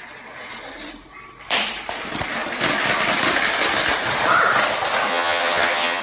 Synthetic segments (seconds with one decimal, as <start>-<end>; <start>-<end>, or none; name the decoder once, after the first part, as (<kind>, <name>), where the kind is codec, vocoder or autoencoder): 5.1-6.0 (vocoder, HiFi-GAN)